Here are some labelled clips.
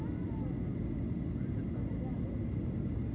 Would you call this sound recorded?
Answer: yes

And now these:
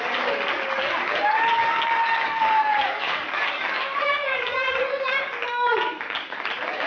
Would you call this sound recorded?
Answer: no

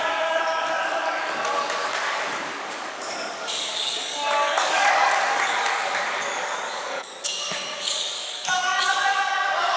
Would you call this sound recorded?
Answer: no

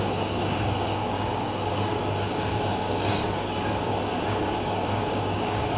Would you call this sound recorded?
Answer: no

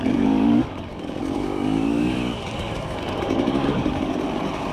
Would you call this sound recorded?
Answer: no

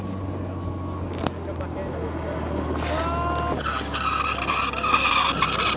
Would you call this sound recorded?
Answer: yes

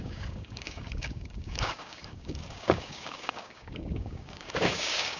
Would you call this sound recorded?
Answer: no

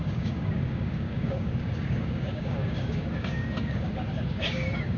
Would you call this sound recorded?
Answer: no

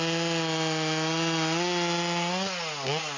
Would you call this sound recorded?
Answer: yes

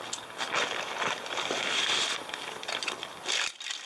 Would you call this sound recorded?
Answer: yes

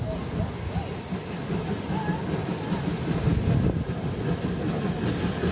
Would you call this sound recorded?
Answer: yes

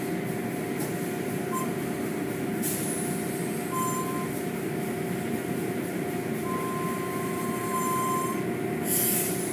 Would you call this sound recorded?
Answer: yes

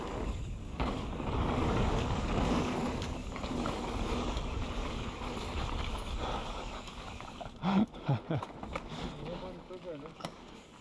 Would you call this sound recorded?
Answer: no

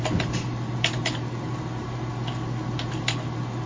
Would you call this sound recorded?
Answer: yes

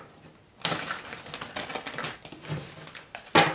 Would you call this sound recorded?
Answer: yes